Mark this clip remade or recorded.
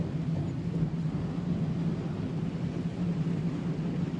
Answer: recorded